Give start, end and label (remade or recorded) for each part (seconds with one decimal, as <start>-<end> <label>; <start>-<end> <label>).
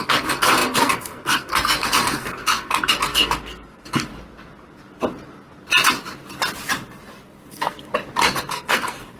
0.0-4.1 remade; 4.1-7.5 recorded; 7.5-7.9 remade; 7.9-8.5 recorded; 8.5-9.2 remade